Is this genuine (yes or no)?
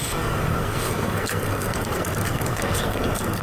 no